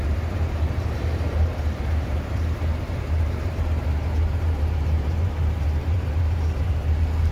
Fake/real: fake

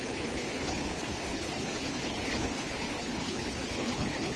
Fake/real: fake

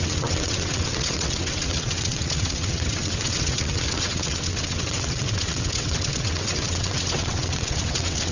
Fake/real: fake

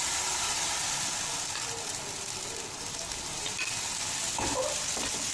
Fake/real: real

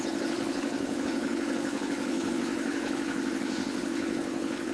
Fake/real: fake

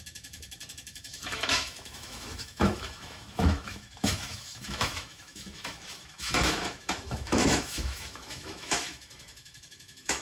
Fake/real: fake